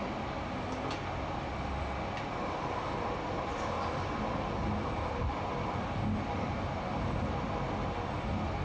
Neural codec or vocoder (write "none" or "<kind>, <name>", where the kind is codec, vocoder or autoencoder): none